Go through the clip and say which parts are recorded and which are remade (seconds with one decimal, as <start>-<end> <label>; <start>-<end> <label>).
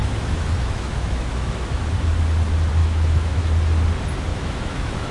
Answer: 0.0-1.8 remade; 1.8-2.8 recorded; 2.8-3.5 remade; 3.5-4.3 recorded; 4.3-5.1 remade